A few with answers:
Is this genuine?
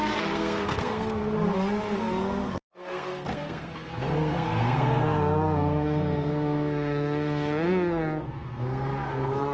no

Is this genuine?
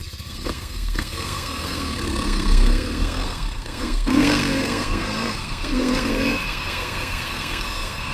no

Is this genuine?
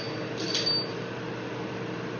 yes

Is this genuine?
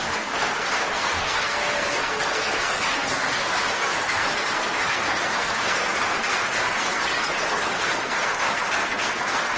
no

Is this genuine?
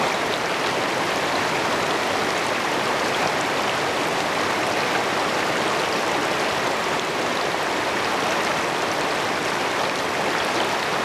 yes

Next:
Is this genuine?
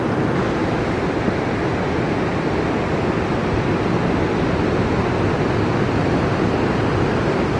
yes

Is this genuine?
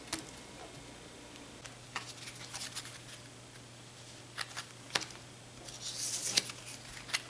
yes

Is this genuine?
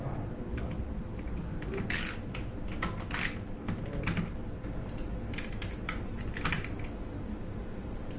yes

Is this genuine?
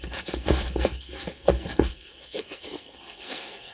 no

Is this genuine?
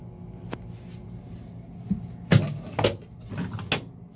yes